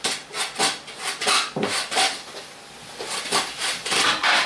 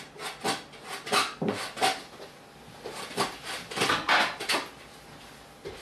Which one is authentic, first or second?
second